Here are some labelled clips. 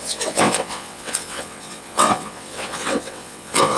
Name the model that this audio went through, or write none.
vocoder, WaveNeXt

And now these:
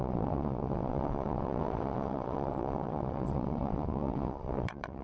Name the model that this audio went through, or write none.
vocoder, WaveNeXt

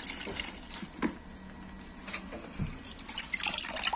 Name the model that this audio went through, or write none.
none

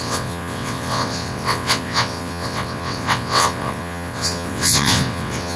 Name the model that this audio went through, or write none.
vocoder, WaveNeXt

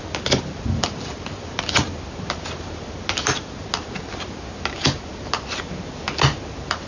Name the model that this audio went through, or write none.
none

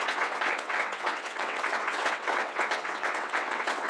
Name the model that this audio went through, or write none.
vocoder, WaveNeXt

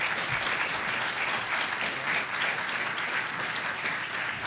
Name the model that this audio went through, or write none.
none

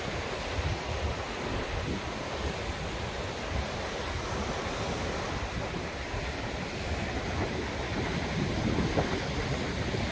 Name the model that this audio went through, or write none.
none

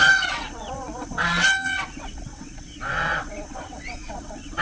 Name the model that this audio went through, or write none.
vocoder, WaveNeXt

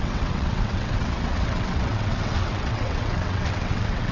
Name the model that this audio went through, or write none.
vocoder, WaveNeXt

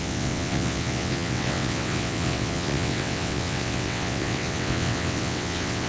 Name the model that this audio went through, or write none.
vocoder, WaveNeXt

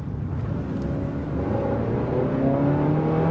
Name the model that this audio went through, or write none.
none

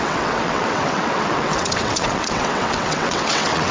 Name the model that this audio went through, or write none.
vocoder, WaveNeXt